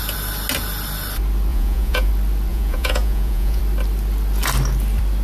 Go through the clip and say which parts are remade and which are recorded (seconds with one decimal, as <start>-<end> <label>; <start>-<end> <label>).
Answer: 0.0-1.5 recorded; 1.5-2.1 remade; 2.1-2.5 recorded; 2.5-3.6 remade; 3.6-5.2 recorded